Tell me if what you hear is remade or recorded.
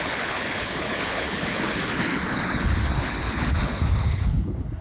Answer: remade